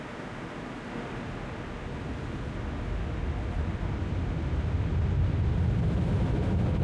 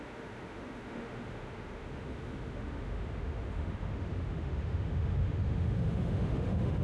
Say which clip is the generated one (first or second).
second